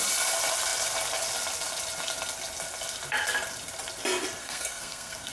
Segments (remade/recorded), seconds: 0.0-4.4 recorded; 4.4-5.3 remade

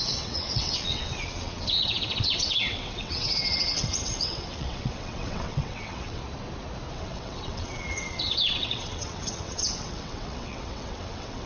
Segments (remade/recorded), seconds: 0.0-6.2 remade; 6.2-6.9 recorded; 6.9-11.5 remade

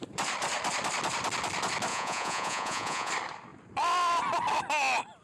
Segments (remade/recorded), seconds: 0.0-1.9 recorded; 1.9-3.1 remade; 3.1-5.2 recorded

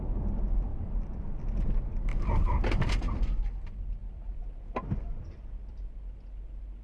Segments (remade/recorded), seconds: 0.0-0.7 recorded; 0.7-1.4 remade; 1.4-6.8 recorded

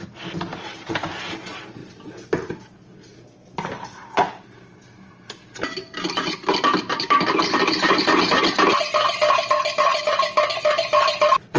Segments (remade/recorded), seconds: 0.0-11.6 recorded

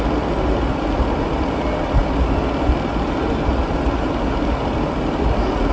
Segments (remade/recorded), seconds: 0.0-5.7 recorded